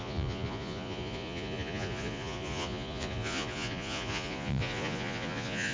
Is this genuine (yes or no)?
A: no